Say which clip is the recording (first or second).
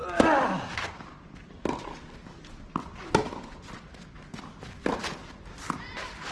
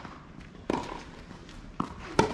first